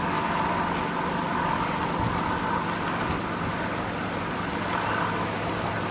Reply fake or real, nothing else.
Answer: real